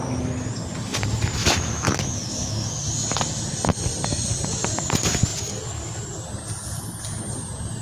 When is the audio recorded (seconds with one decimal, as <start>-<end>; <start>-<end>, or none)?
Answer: 0.0-1.4; 2.8-7.8